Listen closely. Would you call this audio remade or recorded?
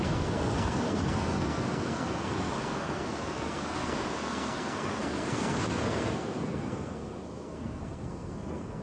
remade